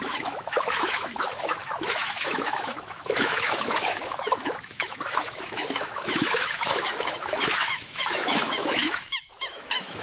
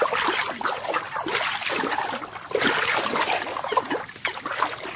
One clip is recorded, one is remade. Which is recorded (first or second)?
second